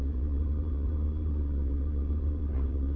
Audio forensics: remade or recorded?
remade